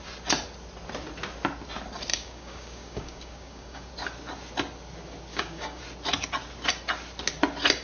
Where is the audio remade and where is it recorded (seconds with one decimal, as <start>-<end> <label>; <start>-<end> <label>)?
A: 0.0-2.1 recorded; 2.1-3.9 remade; 3.9-5.3 recorded; 5.3-5.8 remade; 5.8-7.8 recorded